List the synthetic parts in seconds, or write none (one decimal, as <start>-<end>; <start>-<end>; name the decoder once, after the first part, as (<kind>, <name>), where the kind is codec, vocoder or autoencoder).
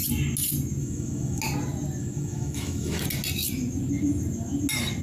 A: 0.8-1.4 (autoencoder, DAC-VAE); 2.0-3.0